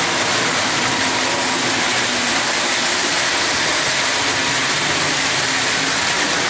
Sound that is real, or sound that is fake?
real